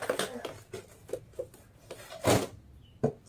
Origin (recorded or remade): recorded